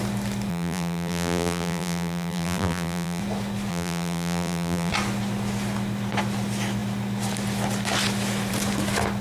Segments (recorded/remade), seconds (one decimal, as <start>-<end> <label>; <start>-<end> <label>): 0.0-0.5 recorded; 0.5-3.2 remade; 3.2-3.7 recorded; 3.7-4.9 remade; 4.9-9.2 recorded